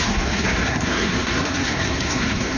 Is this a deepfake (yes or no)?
yes